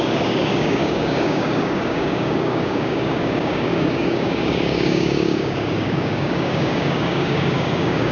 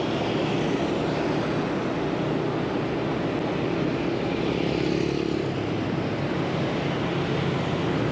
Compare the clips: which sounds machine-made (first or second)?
first